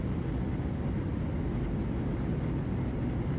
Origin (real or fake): real